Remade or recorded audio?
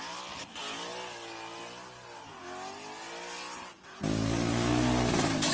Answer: recorded